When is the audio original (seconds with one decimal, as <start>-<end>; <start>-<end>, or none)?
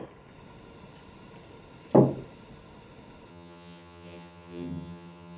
0.0-3.3